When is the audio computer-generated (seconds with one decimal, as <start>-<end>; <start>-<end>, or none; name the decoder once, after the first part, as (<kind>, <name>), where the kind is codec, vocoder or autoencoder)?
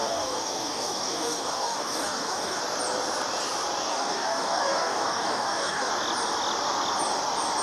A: 0.0-2.6 (codec, DAC); 3.9-5.9